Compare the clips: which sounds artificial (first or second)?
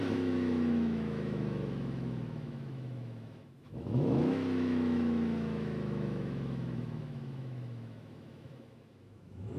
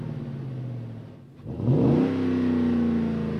first